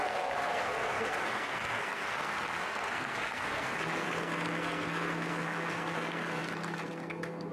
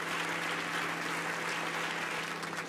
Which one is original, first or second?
second